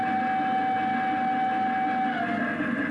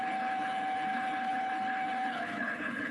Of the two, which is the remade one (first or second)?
second